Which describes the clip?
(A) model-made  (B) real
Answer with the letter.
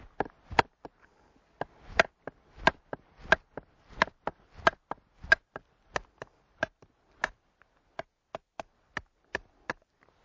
B